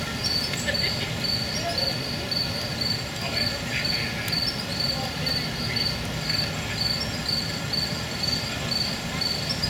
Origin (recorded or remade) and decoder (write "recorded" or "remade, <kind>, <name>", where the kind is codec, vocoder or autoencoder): recorded